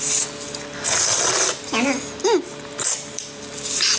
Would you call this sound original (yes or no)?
yes